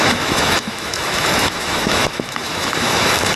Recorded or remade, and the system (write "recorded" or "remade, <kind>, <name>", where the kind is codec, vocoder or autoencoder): remade, autoencoder, DAC-VAE